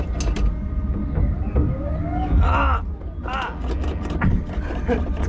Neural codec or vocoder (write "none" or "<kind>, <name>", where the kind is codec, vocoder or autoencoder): none